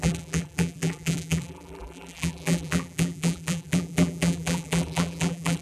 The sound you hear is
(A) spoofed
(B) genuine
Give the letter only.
A